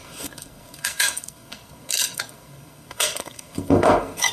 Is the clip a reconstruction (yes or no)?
yes